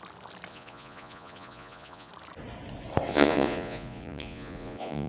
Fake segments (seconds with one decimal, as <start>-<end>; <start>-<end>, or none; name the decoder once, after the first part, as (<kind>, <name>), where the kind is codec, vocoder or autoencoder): 0.5-2.1 (vocoder, Vocos); 3.1-5.1